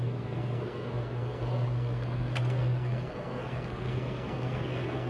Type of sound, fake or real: fake